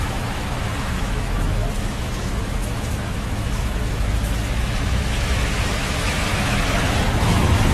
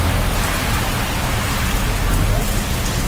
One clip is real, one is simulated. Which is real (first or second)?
second